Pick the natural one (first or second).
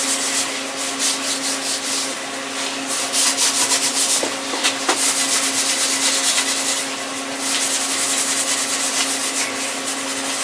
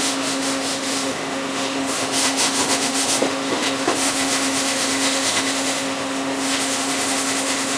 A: first